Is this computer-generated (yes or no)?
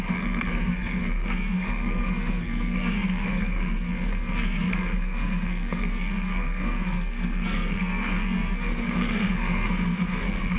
yes